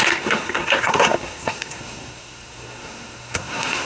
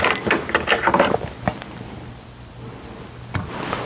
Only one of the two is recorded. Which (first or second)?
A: second